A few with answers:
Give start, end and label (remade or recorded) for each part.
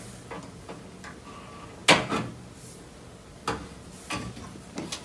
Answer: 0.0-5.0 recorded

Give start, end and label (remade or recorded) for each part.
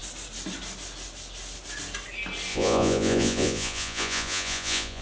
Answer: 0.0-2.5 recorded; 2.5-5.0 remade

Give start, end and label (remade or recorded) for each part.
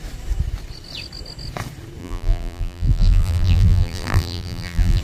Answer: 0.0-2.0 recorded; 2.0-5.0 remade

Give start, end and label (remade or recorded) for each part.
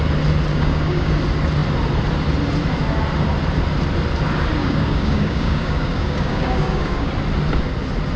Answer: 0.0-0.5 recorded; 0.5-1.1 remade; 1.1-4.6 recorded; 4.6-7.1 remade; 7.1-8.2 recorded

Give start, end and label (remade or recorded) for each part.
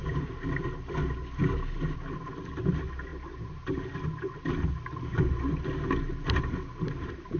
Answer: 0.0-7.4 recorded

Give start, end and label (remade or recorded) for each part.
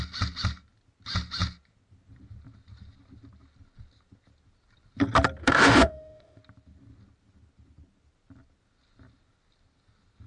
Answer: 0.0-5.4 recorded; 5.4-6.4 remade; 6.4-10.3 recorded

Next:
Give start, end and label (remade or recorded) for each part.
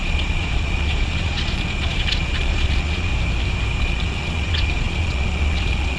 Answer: 0.0-3.1 remade; 3.1-3.8 recorded; 3.8-6.0 remade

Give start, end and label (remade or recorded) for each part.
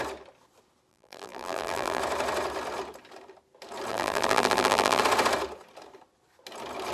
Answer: 0.0-0.9 recorded; 0.9-2.0 remade; 2.0-3.9 recorded; 3.9-5.0 remade; 5.0-6.9 recorded